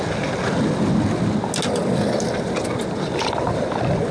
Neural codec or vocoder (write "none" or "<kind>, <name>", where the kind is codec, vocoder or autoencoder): none